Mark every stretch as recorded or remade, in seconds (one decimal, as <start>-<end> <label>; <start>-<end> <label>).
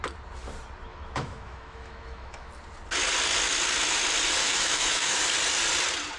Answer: 0.0-0.9 recorded; 0.9-2.5 remade; 2.5-4.4 recorded; 4.4-5.2 remade; 5.2-6.2 recorded